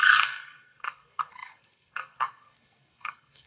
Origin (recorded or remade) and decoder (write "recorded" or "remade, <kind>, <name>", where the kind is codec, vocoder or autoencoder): remade, codec, SNAC